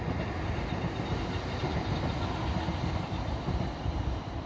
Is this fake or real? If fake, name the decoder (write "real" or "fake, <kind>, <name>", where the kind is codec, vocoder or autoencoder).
real